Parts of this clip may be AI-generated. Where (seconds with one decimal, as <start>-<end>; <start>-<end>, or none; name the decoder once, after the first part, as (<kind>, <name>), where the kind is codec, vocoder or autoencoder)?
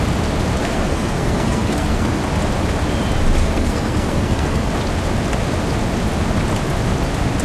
0.6-2.2 (codec, SNAC); 3.4-4.7